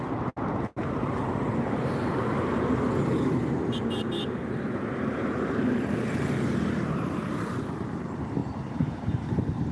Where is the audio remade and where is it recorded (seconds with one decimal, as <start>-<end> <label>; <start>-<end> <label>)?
0.0-0.8 recorded; 0.8-2.8 remade; 2.8-4.4 recorded; 4.4-7.8 remade; 7.8-8.4 recorded; 8.4-9.7 remade